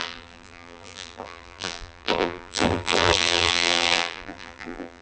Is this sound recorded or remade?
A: remade